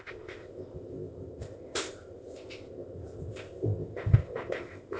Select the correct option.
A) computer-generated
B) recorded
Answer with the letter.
A